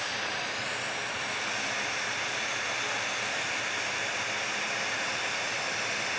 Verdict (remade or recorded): recorded